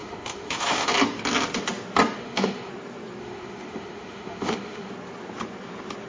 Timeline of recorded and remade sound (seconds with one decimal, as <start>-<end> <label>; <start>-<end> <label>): 0.0-0.9 remade; 0.9-2.2 recorded; 2.2-2.7 remade; 2.7-3.2 recorded; 3.2-4.9 remade; 4.9-6.1 recorded